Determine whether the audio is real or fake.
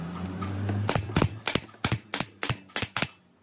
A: real